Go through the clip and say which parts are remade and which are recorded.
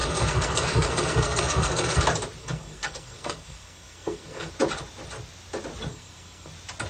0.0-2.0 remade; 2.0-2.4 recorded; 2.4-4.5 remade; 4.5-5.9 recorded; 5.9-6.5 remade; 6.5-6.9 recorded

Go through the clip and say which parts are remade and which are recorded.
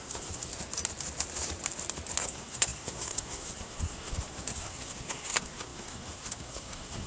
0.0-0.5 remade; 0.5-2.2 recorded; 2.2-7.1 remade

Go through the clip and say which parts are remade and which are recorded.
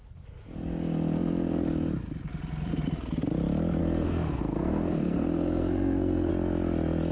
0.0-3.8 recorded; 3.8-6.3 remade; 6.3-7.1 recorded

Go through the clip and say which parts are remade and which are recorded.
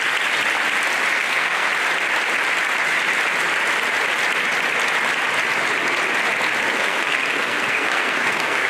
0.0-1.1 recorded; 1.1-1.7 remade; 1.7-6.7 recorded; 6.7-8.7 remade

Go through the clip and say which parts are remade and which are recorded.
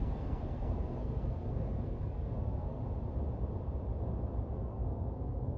0.0-2.8 remade; 2.8-4.5 recorded; 4.5-5.6 remade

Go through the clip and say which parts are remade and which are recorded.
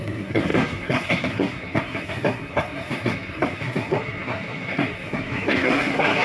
0.0-6.2 remade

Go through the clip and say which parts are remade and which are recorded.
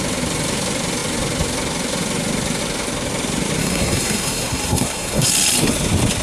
0.0-3.6 recorded; 3.6-5.3 remade; 5.3-6.2 recorded